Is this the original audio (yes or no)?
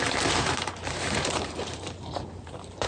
no